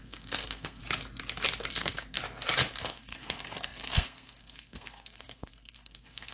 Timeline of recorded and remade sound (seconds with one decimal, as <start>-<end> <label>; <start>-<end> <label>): 0.0-0.8 remade; 0.8-1.7 recorded; 1.7-2.2 remade; 2.2-2.8 recorded; 2.8-6.3 remade